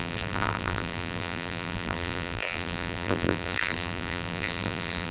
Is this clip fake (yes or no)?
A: yes